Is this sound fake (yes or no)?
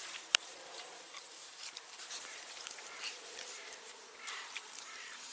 yes